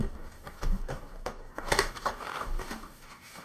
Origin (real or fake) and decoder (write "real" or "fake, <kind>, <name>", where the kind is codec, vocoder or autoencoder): fake, codec, DAC